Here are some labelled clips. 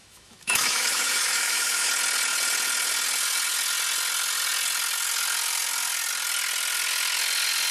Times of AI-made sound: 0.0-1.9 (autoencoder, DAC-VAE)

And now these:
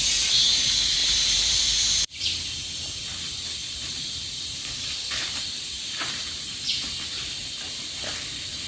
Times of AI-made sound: 1.0-1.7 (vocoder, BigVGAN v2); 3.6-6.4